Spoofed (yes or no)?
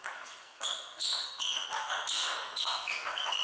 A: yes